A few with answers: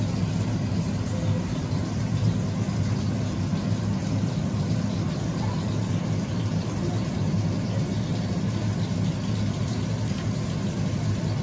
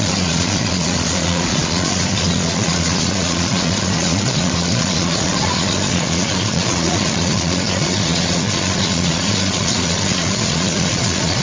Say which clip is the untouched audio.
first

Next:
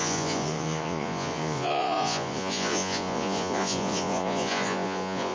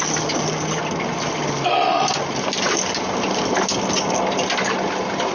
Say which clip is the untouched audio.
second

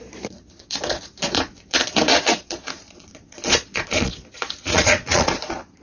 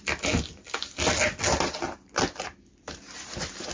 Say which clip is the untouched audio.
second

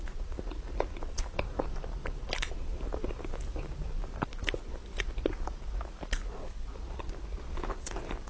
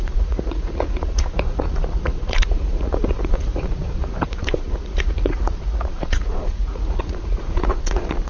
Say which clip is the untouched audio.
first